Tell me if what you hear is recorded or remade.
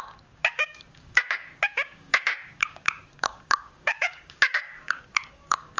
remade